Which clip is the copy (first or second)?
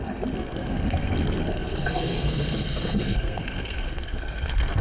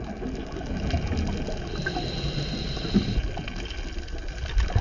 first